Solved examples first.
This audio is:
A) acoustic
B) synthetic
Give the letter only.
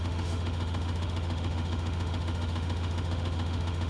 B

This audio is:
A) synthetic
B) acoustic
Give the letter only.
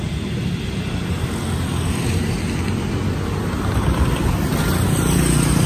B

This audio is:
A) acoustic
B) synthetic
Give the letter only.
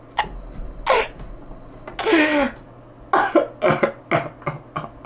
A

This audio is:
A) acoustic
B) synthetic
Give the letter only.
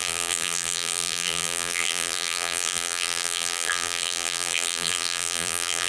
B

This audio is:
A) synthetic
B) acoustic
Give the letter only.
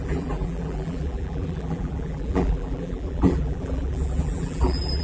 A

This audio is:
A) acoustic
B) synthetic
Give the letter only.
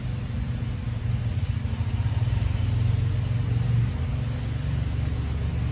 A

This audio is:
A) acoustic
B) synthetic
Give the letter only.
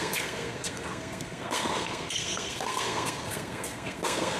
B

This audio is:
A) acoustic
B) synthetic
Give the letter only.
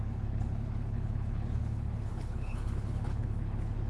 B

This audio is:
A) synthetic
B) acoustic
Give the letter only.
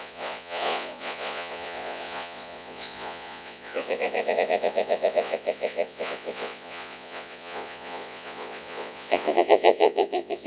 A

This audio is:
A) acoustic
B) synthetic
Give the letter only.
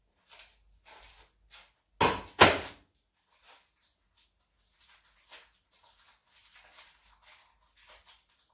A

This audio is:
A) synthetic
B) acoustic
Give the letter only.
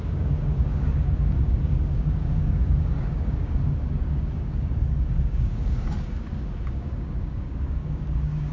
A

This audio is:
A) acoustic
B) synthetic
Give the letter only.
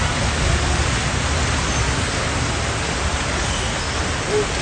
A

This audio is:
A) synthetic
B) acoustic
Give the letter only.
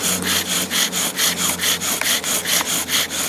B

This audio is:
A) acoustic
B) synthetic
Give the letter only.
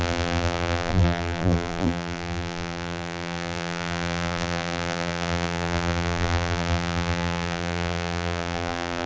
B